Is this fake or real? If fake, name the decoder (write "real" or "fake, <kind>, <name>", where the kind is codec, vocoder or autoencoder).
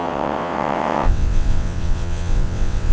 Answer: fake, vocoder, WaveNeXt